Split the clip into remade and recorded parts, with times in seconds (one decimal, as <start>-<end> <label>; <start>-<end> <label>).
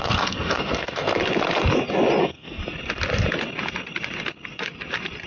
0.0-1.2 remade; 1.2-2.2 recorded; 2.2-2.6 remade; 2.6-5.3 recorded